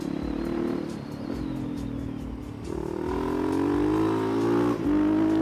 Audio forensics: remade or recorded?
recorded